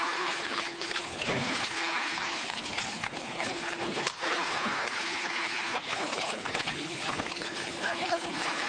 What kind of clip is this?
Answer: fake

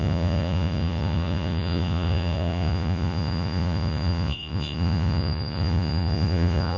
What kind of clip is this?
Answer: fake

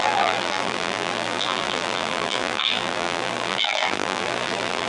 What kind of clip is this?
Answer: fake